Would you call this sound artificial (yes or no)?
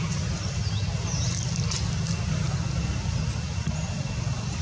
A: no